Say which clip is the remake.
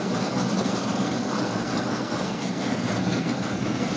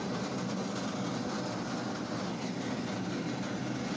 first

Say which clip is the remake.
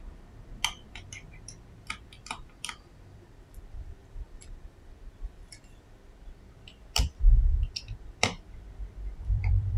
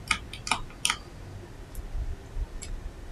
first